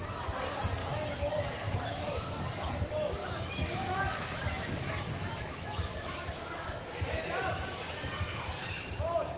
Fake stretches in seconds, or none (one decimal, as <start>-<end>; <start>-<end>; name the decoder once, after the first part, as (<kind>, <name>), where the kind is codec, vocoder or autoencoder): 0.8-2.1 (autoencoder, DAC-VAE); 3.2-6.7